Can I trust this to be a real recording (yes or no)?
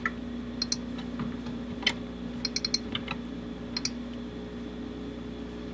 yes